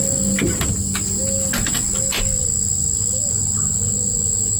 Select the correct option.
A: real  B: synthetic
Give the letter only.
A